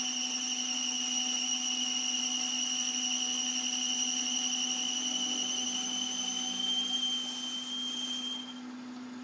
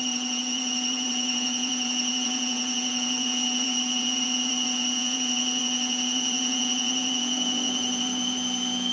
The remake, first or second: second